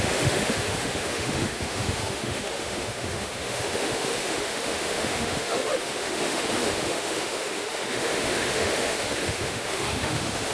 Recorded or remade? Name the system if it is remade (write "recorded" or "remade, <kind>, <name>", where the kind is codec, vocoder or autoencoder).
remade, autoencoder, DAC-VAE